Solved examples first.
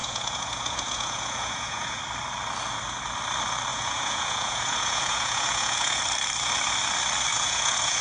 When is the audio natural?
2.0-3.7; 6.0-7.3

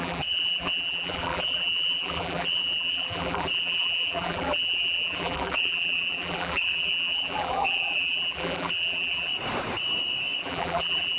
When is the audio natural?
9.3-10.4

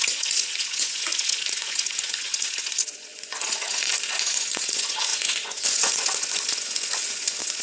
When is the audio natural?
none

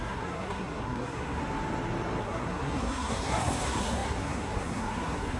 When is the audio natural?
1.4-2.2

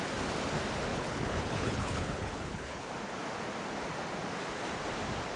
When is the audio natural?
0.0-0.9; 2.9-5.4